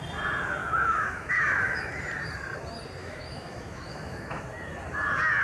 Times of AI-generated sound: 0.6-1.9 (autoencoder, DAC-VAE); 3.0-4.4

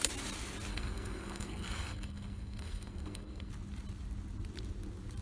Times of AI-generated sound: 0.7-3.5 (codec, SNAC)

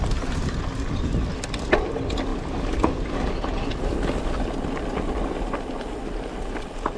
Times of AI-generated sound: none

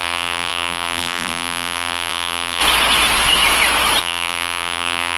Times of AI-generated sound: 0.0-2.6 (vocoder, BigVGAN v2); 4.0-5.2